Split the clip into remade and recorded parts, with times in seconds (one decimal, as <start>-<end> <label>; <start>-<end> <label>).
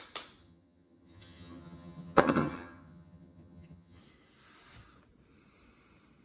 0.0-0.4 recorded; 0.4-4.0 remade; 4.0-6.2 recorded